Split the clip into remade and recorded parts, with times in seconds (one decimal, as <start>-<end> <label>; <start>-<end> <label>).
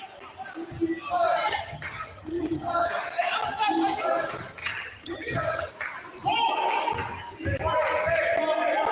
0.0-1.5 recorded; 1.5-2.9 remade; 2.9-4.6 recorded; 4.6-5.7 remade; 5.7-8.9 recorded